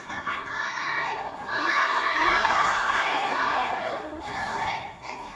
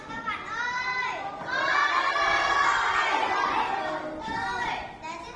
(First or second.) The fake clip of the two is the first